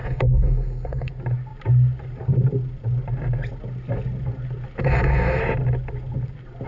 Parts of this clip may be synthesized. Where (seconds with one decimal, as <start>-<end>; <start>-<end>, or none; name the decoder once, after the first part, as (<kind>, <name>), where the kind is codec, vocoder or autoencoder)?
0.0-1.1 (codec, SNAC); 4.8-5.4